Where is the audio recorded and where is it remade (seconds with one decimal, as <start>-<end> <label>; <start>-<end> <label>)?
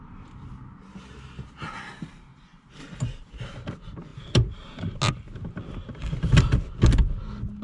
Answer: 0.0-2.3 recorded; 2.3-3.1 remade; 3.1-4.1 recorded; 4.1-5.0 remade; 5.0-7.6 recorded